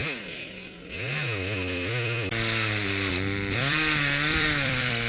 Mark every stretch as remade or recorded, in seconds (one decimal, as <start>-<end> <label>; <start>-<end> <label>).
0.0-3.1 recorded; 3.1-5.1 remade